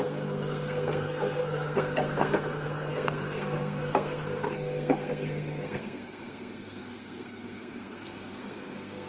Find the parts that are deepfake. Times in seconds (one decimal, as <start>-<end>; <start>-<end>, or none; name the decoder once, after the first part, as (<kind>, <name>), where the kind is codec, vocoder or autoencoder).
0.0-9.1 (codec, SNAC)